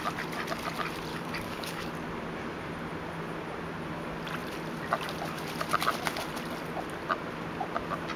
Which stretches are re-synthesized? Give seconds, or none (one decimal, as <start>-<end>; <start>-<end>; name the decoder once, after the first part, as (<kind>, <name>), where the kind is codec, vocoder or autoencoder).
1.1-1.9 (codec, DAC)